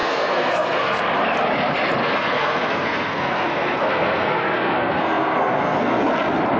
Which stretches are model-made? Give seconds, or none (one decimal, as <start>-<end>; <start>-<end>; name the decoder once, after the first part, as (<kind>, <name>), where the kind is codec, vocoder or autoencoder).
0.0-1.0 (codec, SNAC); 2.0-6.0